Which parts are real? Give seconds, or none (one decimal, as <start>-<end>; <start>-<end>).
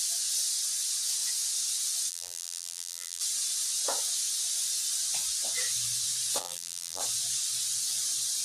0.0-2.1; 3.2-6.4; 7.0-8.4